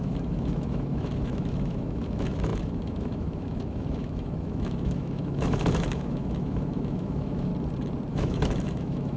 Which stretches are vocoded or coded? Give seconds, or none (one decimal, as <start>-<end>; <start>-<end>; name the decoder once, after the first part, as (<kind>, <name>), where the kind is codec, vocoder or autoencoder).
0.0-7.5 (autoencoder, DAC-VAE); 8.1-9.2